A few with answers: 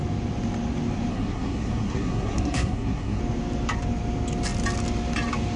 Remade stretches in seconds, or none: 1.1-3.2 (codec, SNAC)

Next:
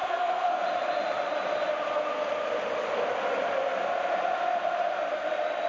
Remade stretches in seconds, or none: 0.0-0.6 (codec, SNAC)

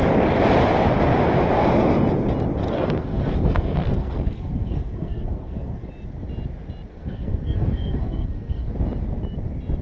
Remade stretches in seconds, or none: 2.6-5.9 (codec, SNAC); 6.9-8.7